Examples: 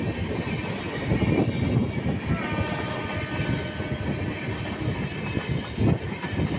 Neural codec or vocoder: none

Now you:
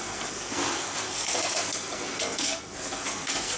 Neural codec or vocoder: codec, SNAC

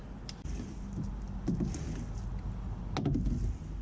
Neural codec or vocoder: none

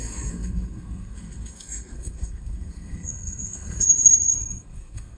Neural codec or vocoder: codec, SNAC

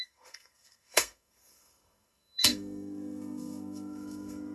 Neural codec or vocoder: codec, SNAC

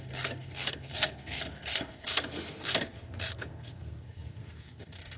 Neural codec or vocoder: codec, SNAC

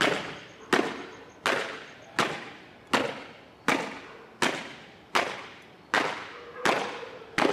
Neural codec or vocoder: none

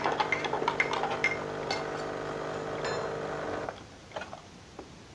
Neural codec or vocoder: none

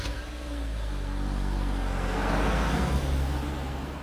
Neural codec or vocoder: codec, SNAC